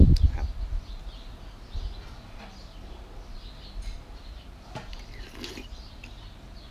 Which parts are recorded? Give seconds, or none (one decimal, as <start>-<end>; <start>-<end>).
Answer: 0.0-6.7